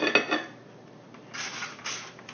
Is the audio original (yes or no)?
yes